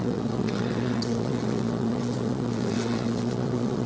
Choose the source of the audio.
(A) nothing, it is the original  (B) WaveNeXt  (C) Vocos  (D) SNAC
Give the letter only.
B